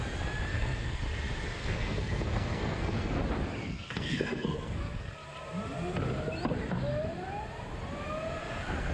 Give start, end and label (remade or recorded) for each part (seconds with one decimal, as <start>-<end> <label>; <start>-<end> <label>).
0.0-0.5 recorded; 0.5-1.0 remade; 1.0-1.6 recorded; 1.6-3.2 remade; 3.2-3.6 recorded; 3.6-5.1 remade; 5.1-8.4 recorded; 8.4-8.9 remade